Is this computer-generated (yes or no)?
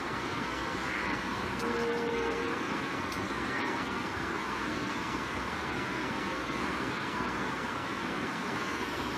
yes